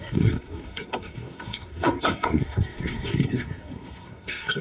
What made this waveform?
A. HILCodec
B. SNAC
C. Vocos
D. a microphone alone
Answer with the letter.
B